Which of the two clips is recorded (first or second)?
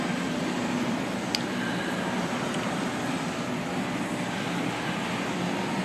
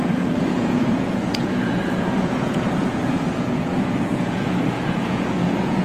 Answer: first